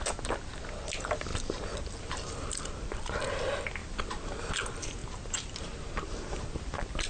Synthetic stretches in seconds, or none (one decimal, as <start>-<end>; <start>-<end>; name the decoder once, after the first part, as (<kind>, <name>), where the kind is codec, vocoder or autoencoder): 3.8-4.5 (vocoder, BigVGAN v2); 5.0-5.6